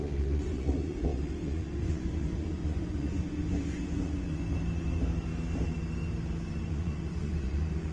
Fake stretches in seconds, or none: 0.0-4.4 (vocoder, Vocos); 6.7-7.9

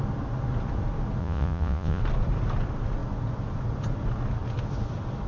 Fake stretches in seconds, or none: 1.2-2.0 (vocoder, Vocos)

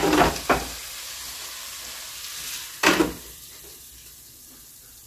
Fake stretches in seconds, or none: none

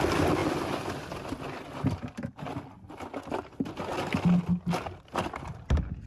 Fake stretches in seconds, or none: none